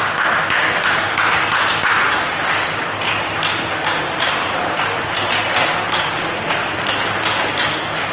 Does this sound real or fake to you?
real